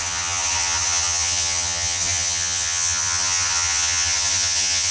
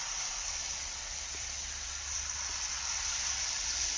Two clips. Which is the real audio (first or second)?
second